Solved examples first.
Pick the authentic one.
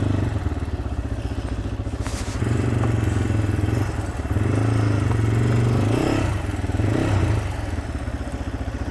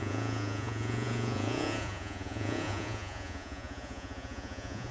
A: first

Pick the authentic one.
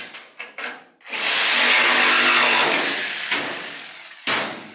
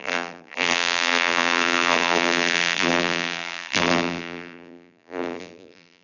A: first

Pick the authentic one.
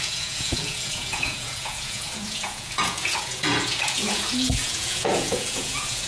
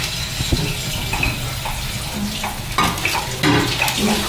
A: second